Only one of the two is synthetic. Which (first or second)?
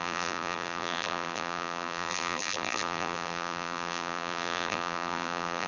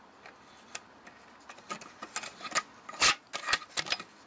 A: first